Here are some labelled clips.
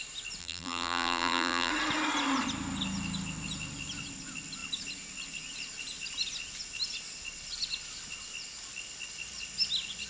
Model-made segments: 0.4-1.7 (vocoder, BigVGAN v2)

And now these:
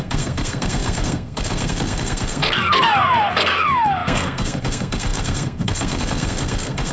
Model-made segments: 0.0-6.9 (codec, SNAC)

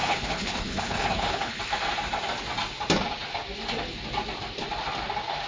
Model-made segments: 0.0-1.6 (codec, HILCodec)